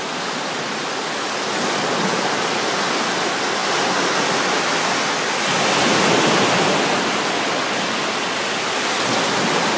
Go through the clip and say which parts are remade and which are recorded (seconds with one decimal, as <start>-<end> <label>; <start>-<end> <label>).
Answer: 0.0-9.8 recorded